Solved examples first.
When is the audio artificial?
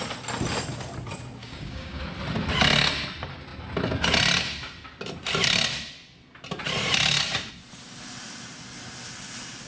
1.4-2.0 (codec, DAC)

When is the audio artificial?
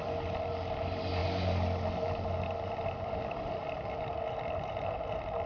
none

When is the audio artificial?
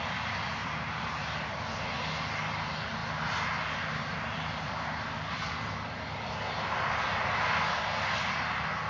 none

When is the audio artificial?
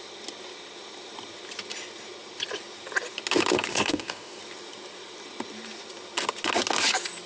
3.7-4.4 (codec, DAC)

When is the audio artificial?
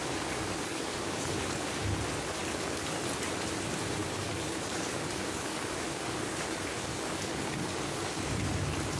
0.0-1.8 (codec, DAC); 2.4-3.0; 4.0-8.4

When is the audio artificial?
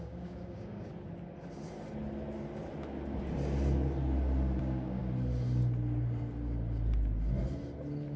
0.0-0.9 (codec, DAC); 4.6-5.0